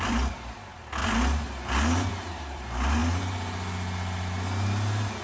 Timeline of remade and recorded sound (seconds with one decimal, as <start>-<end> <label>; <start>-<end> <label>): 0.0-1.0 remade; 1.0-2.3 recorded; 2.3-3.0 remade; 3.0-5.2 recorded